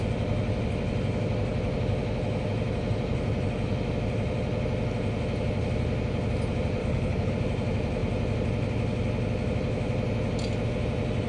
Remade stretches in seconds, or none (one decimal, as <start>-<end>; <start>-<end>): 6.8-7.3